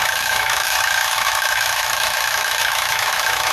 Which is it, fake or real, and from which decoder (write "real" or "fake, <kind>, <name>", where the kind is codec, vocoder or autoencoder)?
fake, autoencoder, DAC-VAE